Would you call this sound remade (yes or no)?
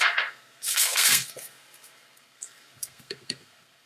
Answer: yes